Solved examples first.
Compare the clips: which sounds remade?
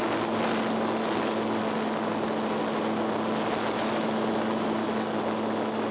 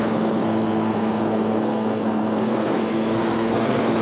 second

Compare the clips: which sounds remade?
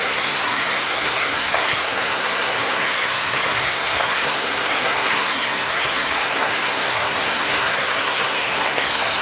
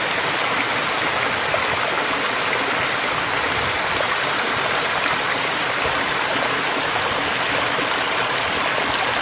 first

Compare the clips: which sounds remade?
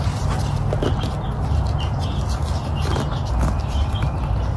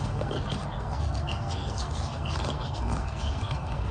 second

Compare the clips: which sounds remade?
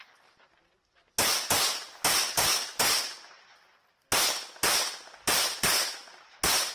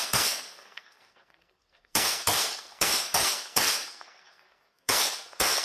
second